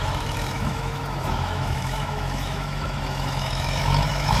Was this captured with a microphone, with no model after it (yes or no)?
no